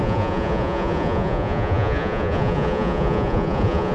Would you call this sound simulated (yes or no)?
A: yes